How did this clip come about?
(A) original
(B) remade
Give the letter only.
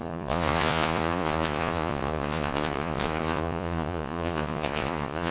B